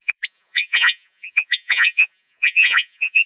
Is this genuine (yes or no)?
no